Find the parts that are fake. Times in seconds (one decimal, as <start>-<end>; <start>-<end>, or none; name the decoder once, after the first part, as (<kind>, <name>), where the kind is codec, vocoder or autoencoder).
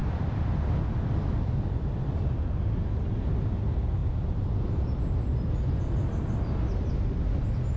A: 0.0-2.6 (vocoder, BigVGAN v2); 4.0-4.5; 5.3-6.1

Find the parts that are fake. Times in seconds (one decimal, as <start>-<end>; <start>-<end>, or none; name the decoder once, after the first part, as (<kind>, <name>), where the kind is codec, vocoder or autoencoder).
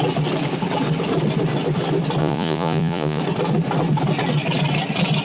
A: 2.2-3.2 (vocoder, Vocos)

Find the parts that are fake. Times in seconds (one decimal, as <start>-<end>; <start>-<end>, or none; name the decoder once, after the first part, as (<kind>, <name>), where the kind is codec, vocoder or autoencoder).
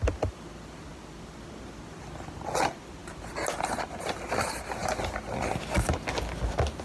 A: none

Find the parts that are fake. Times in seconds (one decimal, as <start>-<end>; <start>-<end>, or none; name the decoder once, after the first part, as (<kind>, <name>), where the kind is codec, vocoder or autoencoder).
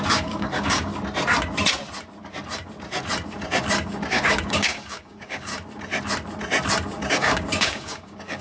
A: 0.0-0.9 (codec, DAC); 4.1-5.5; 7.1-8.4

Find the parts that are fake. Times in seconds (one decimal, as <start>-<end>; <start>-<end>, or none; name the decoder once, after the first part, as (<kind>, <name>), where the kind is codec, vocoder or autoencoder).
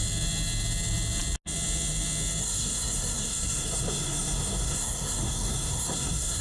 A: 2.4-6.4 (codec, SNAC)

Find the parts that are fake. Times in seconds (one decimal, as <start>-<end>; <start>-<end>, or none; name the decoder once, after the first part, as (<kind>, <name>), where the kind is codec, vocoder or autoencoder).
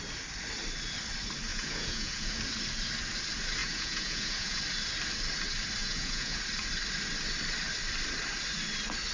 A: 1.5-2.3 (vocoder, Vocos); 3.6-4.6; 5.8-6.4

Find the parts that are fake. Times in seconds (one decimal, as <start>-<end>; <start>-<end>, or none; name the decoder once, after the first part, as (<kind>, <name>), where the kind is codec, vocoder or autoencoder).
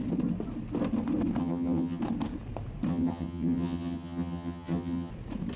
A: 1.4-2.0 (vocoder, HiFi-GAN); 2.9-5.1